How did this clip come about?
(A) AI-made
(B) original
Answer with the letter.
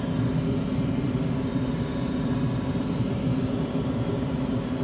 B